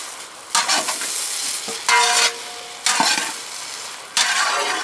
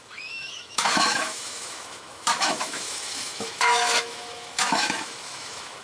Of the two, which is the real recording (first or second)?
first